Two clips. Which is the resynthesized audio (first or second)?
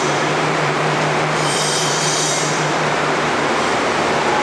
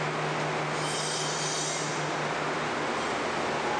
first